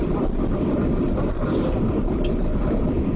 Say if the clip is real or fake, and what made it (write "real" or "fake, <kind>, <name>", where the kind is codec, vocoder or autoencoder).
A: fake, vocoder, BigVGAN v2